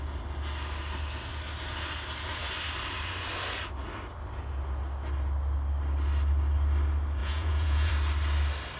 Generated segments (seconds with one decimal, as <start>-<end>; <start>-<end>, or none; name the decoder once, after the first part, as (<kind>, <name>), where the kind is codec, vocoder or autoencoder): 7.2-7.9 (vocoder, Vocos)

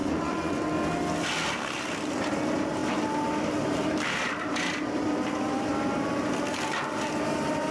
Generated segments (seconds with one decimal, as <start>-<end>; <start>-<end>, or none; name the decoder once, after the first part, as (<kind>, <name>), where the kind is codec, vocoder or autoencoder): 0.0-0.6 (vocoder, Vocos)

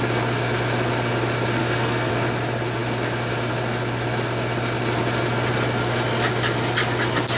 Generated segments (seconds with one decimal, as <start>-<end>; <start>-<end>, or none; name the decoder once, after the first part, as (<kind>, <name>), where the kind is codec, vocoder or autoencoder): 1.6-2.1 (codec, SNAC)

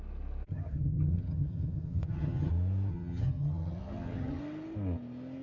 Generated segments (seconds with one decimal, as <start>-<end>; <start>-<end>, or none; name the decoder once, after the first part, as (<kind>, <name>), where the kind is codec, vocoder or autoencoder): 0.5-2.5 (vocoder, HiFi-GAN); 2.9-4.4

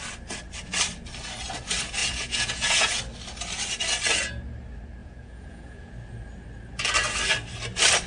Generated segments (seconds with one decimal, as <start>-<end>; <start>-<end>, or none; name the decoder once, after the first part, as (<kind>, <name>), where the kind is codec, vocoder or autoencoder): 2.0-3.0 (vocoder, Vocos); 5.0-5.9

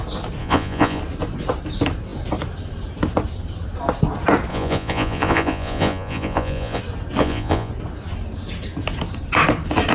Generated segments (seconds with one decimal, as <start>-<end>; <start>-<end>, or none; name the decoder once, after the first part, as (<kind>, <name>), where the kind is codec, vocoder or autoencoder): 0.4-1.0 (vocoder, Vocos); 4.5-6.8; 7.2-7.7